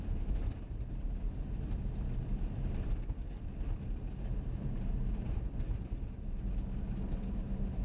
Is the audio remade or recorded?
remade